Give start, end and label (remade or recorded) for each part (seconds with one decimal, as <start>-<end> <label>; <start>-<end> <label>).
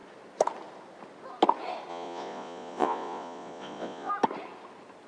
0.0-1.9 recorded; 1.9-4.1 remade; 4.1-5.1 recorded